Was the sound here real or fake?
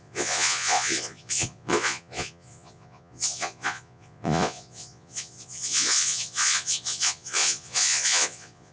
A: fake